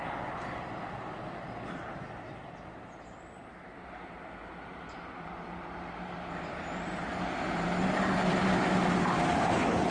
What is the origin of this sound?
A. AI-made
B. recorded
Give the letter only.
B